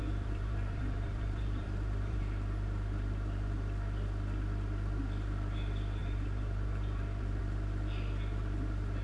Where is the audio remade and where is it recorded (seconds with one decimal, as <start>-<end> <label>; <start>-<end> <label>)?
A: 0.0-2.2 remade; 2.2-6.0 recorded; 6.0-7.4 remade; 7.4-9.0 recorded